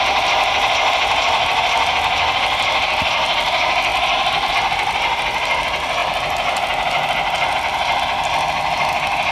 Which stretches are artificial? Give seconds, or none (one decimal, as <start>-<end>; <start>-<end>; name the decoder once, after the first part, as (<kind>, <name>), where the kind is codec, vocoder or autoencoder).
none